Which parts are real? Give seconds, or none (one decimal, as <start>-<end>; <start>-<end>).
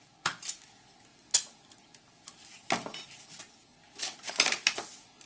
0.0-5.3